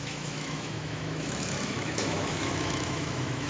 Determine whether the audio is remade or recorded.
remade